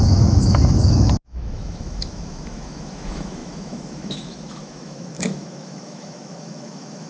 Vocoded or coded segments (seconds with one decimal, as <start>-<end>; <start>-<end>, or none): 0.0-7.1